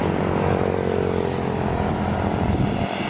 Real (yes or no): yes